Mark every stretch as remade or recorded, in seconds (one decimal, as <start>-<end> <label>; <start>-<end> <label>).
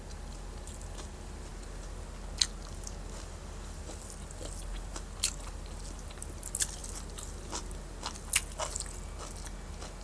0.0-10.0 recorded